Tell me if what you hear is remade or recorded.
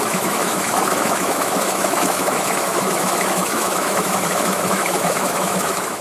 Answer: remade